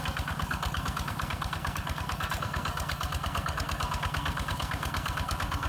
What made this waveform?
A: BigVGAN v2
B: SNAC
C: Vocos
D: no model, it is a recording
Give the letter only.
B